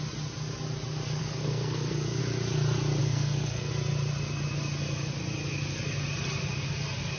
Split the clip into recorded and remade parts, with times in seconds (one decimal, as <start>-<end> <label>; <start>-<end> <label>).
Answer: 0.0-1.2 recorded; 1.2-2.2 remade; 2.2-3.0 recorded; 3.0-3.7 remade; 3.7-7.2 recorded